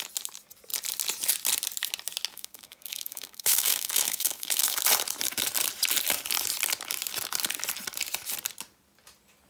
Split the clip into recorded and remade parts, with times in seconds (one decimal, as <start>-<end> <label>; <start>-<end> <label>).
0.0-2.3 recorded; 2.3-4.8 remade; 4.8-9.5 recorded